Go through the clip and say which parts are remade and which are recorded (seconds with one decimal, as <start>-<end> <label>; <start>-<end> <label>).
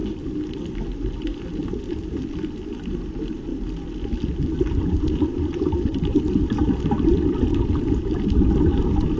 0.0-9.2 recorded